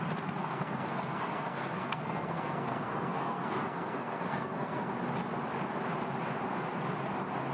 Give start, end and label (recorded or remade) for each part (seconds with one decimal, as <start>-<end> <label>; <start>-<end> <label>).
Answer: 0.0-0.4 recorded; 0.4-4.9 remade; 4.9-7.5 recorded

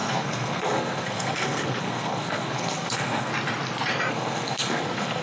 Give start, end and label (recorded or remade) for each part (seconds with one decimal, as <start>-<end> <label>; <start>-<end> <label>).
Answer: 0.0-3.3 remade; 3.3-4.1 recorded; 4.1-5.2 remade

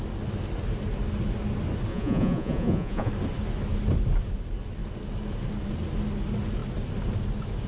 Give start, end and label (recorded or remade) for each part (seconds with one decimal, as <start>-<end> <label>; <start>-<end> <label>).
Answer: 0.0-1.9 recorded; 1.9-3.1 remade; 3.1-7.7 recorded